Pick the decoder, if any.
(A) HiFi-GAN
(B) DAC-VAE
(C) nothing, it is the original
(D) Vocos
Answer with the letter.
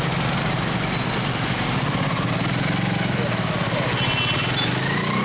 C